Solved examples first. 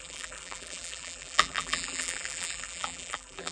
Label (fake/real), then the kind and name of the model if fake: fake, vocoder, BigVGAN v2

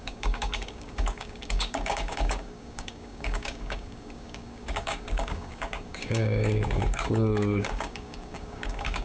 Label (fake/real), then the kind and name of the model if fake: fake, codec, DAC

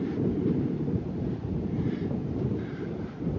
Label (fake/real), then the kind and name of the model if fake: fake, vocoder, BigVGAN v2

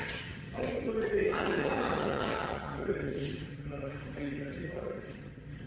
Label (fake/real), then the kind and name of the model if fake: fake, vocoder, HiFi-GAN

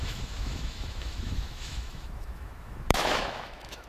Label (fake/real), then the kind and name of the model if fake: fake, autoencoder, DAC-VAE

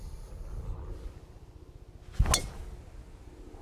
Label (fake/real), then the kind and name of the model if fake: real